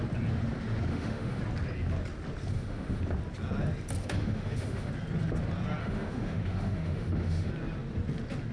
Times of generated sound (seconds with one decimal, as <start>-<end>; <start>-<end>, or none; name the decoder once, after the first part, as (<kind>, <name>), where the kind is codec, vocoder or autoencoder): 0.9-1.4 (autoencoder, DAC-VAE); 2.5-3.0; 4.0-4.9; 5.8-7.5